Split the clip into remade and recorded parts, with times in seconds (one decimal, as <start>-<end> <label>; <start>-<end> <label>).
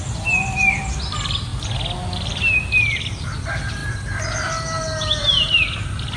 0.0-1.5 remade; 1.5-2.1 recorded; 2.1-3.8 remade; 3.8-5.5 recorded; 5.5-6.2 remade